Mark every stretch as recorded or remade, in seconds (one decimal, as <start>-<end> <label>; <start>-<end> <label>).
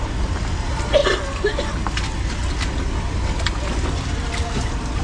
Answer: 0.0-1.0 remade; 1.0-3.8 recorded; 3.8-5.0 remade